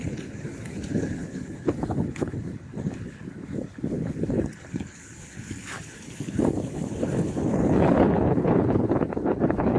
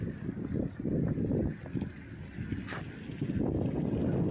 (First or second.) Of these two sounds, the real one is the second